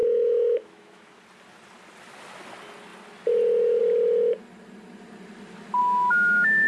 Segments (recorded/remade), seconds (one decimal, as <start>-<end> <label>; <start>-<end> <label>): 0.0-1.2 remade; 1.2-5.8 recorded; 5.8-6.7 remade